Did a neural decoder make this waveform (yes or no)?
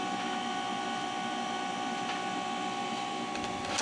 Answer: no